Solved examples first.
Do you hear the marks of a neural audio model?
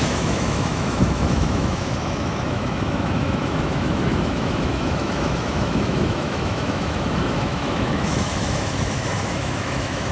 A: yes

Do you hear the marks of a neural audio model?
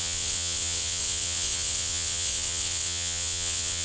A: yes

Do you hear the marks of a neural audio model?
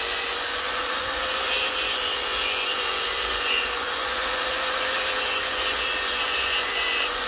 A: yes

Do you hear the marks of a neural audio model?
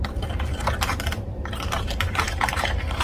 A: yes